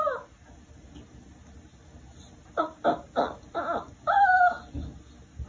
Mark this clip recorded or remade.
recorded